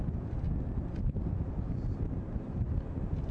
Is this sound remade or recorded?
recorded